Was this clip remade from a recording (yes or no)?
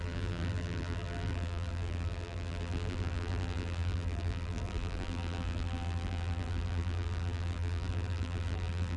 yes